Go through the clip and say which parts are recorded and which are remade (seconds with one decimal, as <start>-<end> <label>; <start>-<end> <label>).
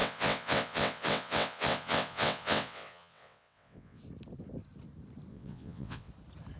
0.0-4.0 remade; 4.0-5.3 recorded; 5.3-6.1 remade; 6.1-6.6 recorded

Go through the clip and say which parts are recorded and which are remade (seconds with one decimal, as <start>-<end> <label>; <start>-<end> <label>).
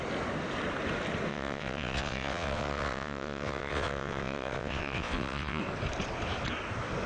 0.0-1.3 recorded; 1.3-5.6 remade; 5.6-7.1 recorded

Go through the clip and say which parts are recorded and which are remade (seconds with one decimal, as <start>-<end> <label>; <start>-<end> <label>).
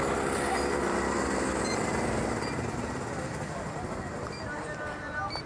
0.0-5.5 recorded